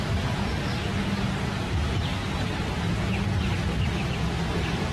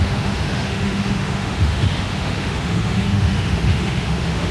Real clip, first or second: first